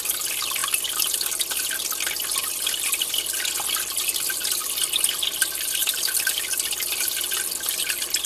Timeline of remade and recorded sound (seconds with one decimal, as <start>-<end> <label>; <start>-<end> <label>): 0.0-2.4 recorded; 2.4-3.1 remade; 3.1-5.8 recorded; 5.8-6.8 remade; 6.8-8.3 recorded